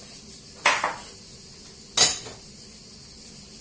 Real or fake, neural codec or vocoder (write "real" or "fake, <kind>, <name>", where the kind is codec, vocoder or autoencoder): real